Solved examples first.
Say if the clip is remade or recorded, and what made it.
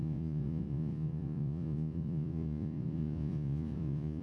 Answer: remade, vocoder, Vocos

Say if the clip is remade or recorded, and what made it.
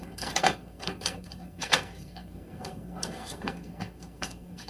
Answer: remade, codec, SNAC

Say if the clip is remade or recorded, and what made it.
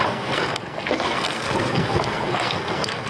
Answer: remade, codec, SNAC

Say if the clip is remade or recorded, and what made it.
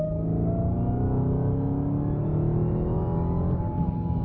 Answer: recorded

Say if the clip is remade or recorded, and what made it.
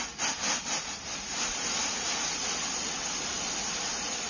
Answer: recorded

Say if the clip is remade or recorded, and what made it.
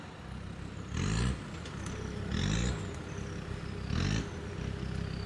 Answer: recorded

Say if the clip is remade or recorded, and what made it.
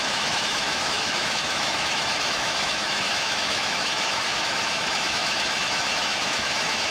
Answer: remade, autoencoder, DAC-VAE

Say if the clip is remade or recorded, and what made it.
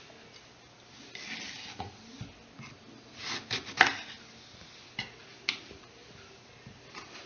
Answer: recorded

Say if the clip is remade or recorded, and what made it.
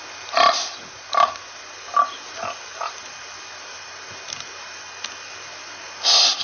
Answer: recorded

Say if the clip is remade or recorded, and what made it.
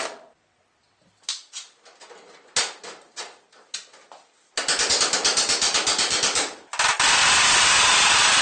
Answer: recorded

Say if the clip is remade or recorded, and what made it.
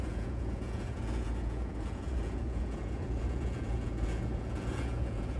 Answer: remade, vocoder, Vocos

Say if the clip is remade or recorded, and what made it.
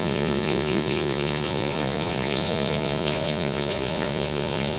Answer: remade, vocoder, Vocos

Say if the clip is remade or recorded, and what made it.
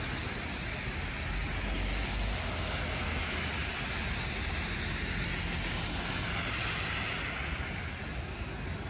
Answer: recorded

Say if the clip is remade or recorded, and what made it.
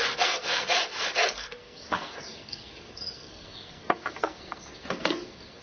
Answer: remade, codec, SNAC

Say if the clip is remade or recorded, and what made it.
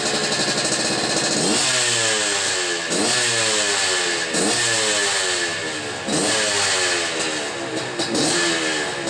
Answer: recorded